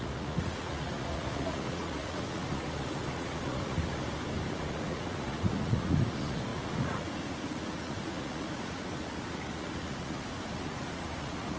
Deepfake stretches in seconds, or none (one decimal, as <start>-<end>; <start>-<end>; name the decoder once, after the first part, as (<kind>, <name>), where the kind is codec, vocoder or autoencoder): 0.0-4.0 (vocoder, Vocos); 4.5-11.6